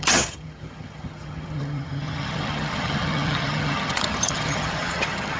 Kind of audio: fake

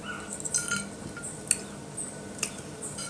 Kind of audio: real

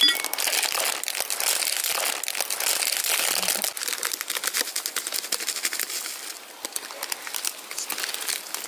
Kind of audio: real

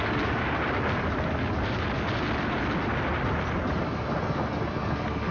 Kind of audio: real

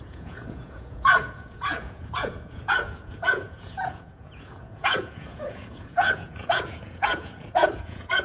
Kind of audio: fake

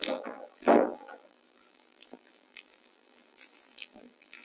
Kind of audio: fake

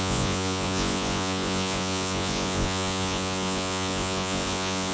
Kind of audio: fake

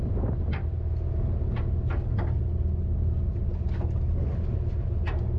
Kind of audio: real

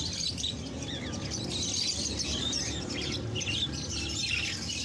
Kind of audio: real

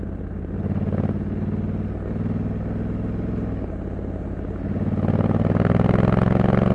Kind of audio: real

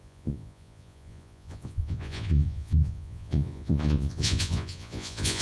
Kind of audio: fake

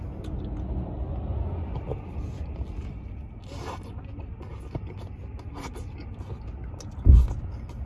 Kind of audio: real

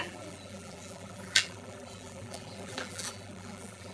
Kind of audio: fake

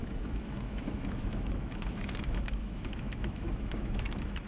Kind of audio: fake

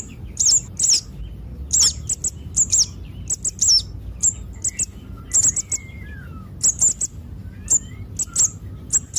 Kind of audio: real